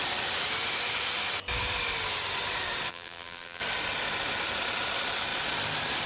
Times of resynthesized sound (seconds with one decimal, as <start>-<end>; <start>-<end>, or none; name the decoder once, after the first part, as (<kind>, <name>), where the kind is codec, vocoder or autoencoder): 2.9-3.6 (vocoder, BigVGAN v2)